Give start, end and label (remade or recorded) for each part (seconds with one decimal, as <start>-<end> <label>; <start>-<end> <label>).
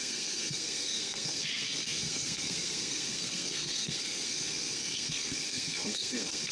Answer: 0.0-6.5 remade